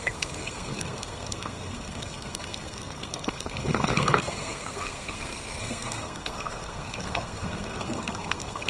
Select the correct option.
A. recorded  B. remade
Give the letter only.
B